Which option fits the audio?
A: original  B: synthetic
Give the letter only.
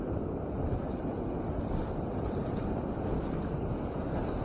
A